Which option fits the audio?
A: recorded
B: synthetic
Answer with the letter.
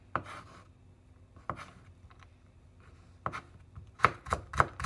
A